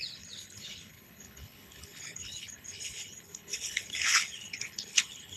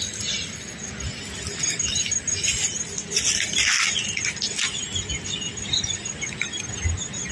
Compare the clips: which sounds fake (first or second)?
first